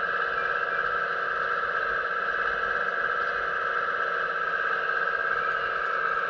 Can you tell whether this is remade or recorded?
recorded